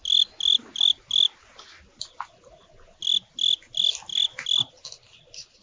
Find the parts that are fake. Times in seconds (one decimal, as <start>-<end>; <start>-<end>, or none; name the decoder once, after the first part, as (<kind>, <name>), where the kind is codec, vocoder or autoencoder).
none